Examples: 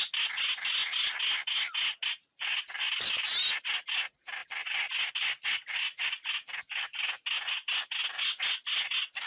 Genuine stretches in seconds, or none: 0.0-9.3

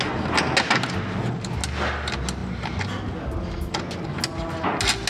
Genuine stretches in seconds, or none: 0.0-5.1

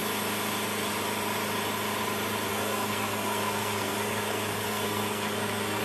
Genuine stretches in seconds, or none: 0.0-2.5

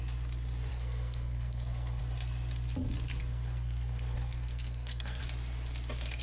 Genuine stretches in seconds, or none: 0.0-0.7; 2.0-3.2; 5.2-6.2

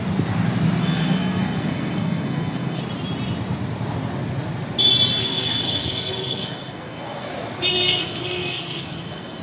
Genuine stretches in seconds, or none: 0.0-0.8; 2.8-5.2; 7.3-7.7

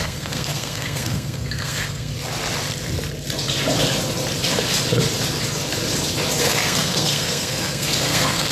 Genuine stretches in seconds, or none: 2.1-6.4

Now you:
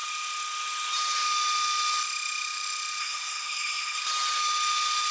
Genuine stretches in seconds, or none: 0.0-3.0; 4.0-5.1

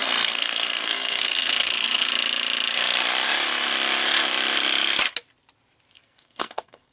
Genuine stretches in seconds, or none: 2.1-5.9